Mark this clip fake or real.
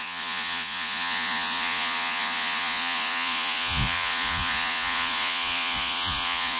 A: fake